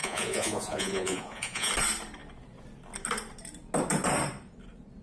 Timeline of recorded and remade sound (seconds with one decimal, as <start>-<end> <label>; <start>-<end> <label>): 0.0-1.7 remade; 1.7-5.0 recorded